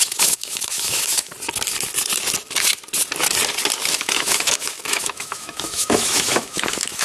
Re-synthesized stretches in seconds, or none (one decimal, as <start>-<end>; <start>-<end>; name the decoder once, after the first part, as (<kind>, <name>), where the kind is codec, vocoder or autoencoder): 0.0-1.3 (autoencoder, DAC-VAE); 4.0-7.0